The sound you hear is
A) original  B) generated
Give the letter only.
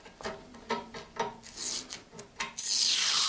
A